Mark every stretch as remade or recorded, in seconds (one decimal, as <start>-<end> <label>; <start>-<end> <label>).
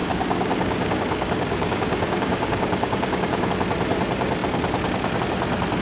0.0-3.5 remade; 3.5-5.8 recorded